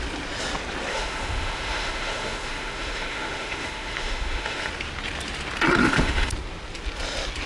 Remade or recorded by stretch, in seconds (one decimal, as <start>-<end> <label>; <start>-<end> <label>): 0.0-0.9 recorded; 0.9-4.7 remade; 4.7-5.8 recorded; 5.8-6.3 remade; 6.3-7.5 recorded